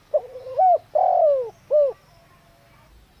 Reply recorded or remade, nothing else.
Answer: recorded